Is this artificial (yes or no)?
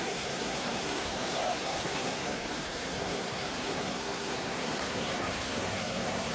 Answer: yes